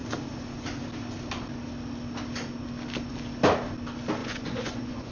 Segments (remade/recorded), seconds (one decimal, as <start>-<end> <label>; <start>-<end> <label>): 0.0-4.2 recorded; 4.2-5.1 remade